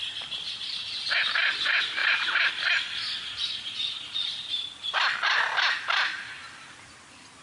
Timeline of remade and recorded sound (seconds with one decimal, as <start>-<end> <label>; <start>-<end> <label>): 0.0-0.9 remade; 0.9-2.0 recorded; 2.0-2.5 remade; 2.5-7.4 recorded